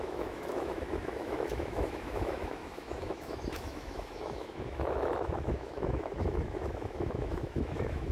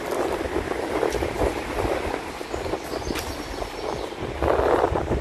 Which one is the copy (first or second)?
first